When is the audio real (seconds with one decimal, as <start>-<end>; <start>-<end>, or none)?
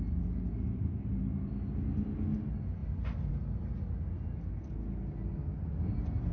0.0-6.3